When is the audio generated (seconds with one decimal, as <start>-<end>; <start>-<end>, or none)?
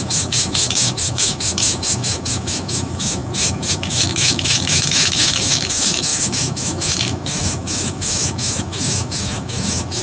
0.0-10.0